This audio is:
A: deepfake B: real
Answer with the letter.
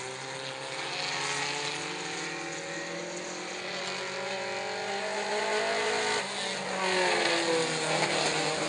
B